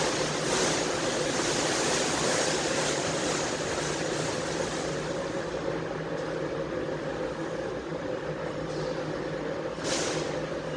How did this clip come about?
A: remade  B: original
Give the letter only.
B